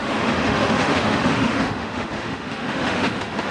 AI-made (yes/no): yes